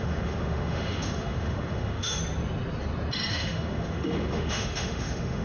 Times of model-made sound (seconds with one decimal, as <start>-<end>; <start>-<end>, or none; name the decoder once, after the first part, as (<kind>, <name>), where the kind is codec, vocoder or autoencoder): 0.0-2.2 (autoencoder, DAC-VAE); 3.3-5.4